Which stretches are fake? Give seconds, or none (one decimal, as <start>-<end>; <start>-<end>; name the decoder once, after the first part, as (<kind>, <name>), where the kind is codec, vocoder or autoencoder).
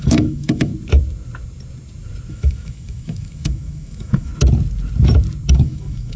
0.0-0.7 (autoencoder, DAC-VAE); 2.3-4.3; 5.5-6.2